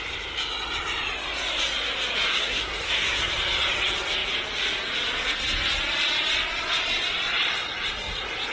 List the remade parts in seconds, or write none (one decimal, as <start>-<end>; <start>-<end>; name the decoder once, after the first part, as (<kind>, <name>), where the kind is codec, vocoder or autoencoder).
2.3-3.3 (codec, SNAC)